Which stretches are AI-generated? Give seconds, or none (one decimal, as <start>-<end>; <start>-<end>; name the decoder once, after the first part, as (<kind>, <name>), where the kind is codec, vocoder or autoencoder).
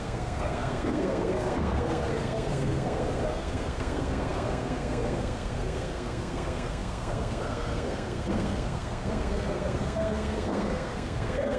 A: 0.0-11.6 (codec, SNAC)